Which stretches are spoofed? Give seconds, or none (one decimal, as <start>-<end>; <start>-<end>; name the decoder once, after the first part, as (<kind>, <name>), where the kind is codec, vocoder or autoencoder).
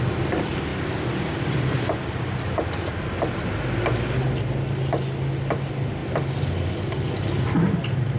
none